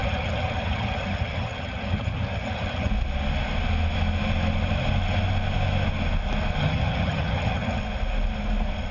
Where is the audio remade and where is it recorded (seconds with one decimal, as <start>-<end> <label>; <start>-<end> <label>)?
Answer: 0.0-2.9 remade; 2.9-6.6 recorded; 6.6-7.8 remade; 7.8-8.9 recorded